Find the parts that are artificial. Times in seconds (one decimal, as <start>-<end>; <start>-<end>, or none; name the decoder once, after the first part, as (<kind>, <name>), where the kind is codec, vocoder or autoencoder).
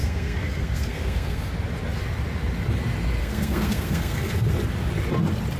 0.0-1.5 (codec, SNAC); 3.2-4.5